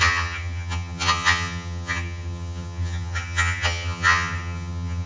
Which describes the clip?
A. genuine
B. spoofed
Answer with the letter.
B